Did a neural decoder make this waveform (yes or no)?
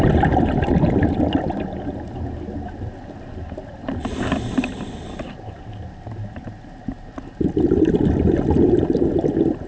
no